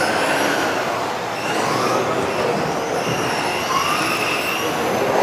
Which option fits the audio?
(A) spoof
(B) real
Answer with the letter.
B